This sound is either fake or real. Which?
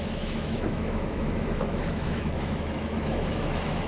fake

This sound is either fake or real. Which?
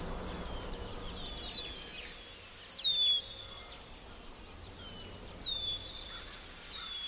real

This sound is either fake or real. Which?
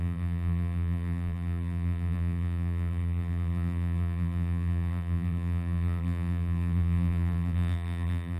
fake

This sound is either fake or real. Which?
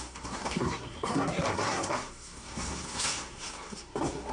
fake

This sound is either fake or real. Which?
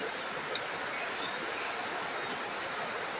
real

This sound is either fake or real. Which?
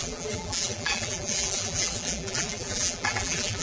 fake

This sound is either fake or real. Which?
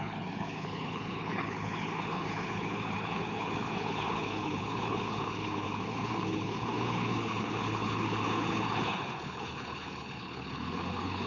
fake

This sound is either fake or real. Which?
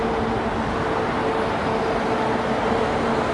real